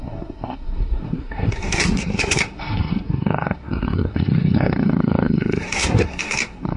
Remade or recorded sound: remade